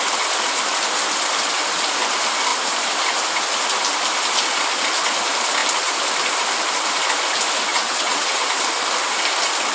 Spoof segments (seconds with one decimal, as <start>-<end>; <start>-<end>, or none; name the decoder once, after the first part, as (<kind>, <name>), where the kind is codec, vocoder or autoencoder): 7.7-8.5 (vocoder, WaveNeXt)